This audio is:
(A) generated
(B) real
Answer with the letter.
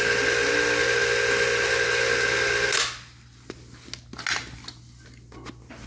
B